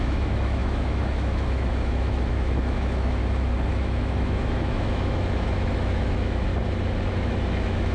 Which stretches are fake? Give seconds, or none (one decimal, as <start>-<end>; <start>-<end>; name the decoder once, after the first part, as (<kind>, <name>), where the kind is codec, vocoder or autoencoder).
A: 0.0-3.2 (autoencoder, DAC-VAE); 3.7-6.5; 7.1-7.9